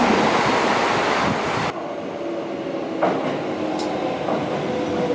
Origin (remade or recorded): recorded